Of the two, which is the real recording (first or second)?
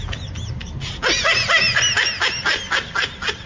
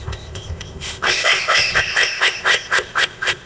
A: first